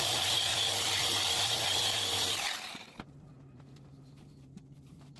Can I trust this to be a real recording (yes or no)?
no